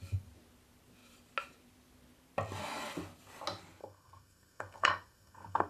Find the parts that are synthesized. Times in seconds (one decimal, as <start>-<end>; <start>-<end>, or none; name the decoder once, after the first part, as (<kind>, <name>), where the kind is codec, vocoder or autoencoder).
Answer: 3.8-5.7 (codec, SNAC)